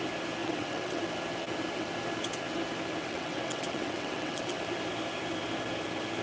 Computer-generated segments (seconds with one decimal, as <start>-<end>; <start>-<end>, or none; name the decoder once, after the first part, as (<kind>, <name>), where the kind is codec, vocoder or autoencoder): 0.4-1.0 (vocoder, WaveNeXt); 3.0-4.6